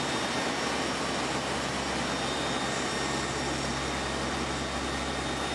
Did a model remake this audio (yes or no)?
no